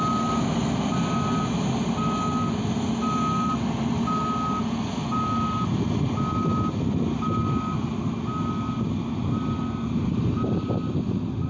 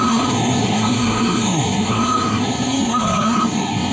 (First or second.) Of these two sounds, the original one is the first